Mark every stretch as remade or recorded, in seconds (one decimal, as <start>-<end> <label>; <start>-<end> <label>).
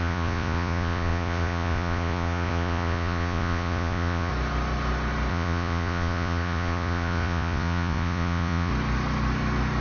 0.0-4.3 remade; 4.3-5.3 recorded; 5.3-8.7 remade; 8.7-9.8 recorded